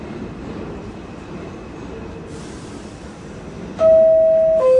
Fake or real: real